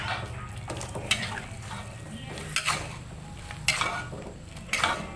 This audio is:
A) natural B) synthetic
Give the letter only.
A